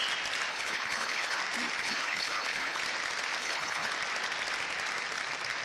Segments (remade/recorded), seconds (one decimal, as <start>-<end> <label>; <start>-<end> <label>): 0.0-0.5 recorded; 0.5-1.4 remade; 1.4-1.8 recorded; 1.8-2.8 remade; 2.8-3.4 recorded; 3.4-3.9 remade; 3.9-5.6 recorded